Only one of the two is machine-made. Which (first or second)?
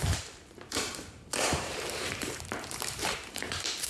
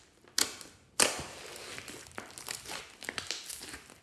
first